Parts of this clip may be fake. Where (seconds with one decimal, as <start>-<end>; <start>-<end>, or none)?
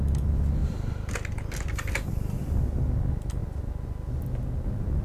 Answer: 0.6-1.1